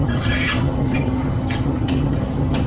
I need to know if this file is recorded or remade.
remade